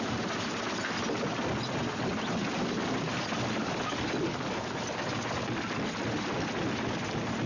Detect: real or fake real